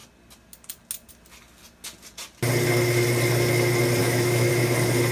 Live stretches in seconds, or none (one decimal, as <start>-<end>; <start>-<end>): 0.0-4.0; 4.5-5.1